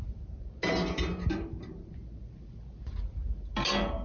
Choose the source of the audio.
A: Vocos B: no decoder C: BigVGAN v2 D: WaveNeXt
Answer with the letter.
B